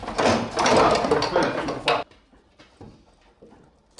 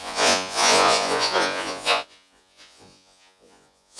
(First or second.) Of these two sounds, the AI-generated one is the second